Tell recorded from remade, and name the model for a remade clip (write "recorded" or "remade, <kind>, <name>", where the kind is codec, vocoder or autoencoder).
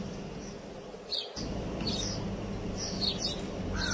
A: recorded